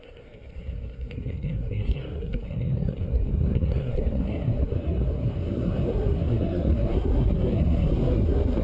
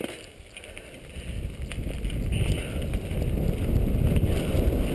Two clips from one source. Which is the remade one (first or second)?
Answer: first